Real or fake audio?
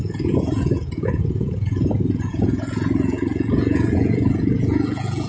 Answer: fake